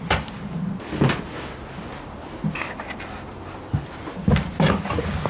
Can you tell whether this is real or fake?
real